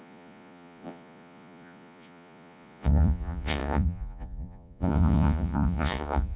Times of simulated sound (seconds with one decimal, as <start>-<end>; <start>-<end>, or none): 0.0-6.4